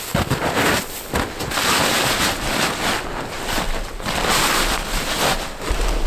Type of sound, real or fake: real